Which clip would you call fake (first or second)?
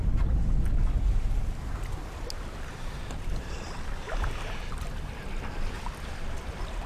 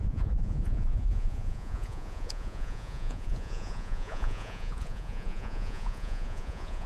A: second